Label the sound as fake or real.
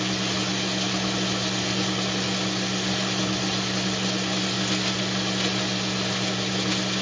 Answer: real